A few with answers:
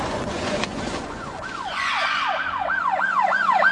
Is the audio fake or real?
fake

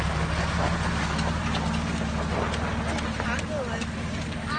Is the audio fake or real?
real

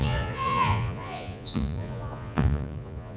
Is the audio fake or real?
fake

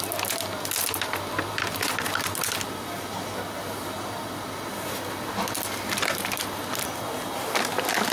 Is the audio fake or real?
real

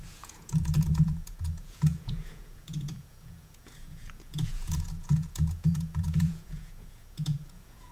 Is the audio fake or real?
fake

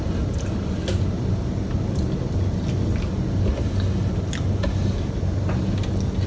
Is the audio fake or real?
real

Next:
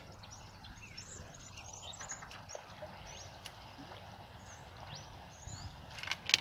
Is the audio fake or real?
real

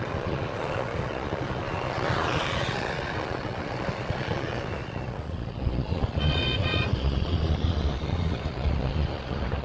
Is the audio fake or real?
fake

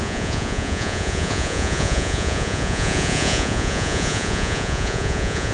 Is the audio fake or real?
fake